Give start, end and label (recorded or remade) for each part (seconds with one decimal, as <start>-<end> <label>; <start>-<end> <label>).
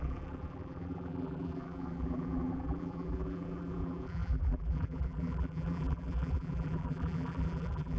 0.0-8.0 remade